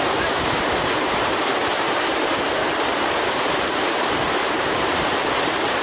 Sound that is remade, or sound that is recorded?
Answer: remade